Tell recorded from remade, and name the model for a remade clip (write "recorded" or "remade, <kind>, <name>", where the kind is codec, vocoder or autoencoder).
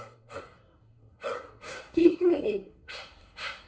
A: remade, codec, SNAC